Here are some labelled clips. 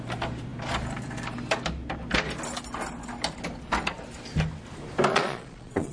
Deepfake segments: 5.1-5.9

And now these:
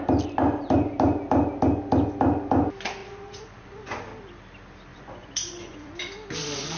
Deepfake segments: 3.0-4.0; 4.9-6.0